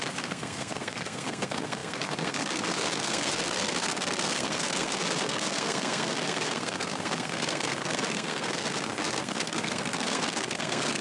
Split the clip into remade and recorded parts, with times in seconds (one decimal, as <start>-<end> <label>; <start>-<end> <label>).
0.0-11.0 remade